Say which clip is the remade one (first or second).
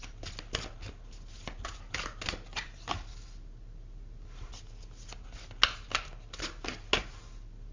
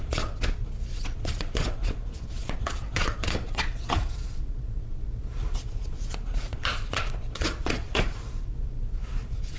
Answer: second